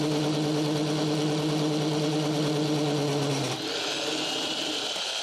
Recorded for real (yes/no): yes